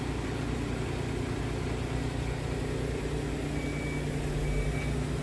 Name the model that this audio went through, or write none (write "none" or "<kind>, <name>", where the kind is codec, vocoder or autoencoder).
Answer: none